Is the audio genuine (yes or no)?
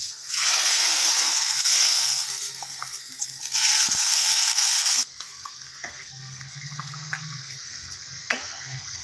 no